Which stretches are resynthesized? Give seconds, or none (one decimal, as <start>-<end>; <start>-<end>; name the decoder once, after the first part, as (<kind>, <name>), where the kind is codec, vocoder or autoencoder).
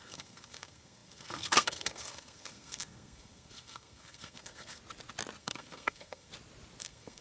0.0-4.8 (codec, SNAC); 5.4-6.3; 6.8-7.2